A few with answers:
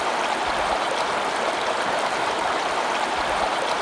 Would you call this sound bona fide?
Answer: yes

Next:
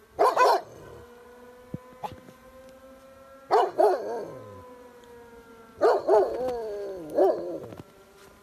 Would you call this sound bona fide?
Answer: yes